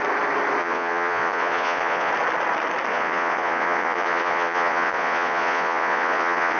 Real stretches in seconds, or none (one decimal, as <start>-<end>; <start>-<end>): 0.0-0.6; 2.1-2.9